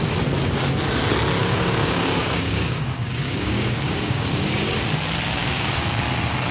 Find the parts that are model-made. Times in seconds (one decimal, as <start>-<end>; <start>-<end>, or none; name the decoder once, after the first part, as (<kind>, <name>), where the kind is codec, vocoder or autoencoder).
1.4-4.6 (codec, DAC); 5.4-6.0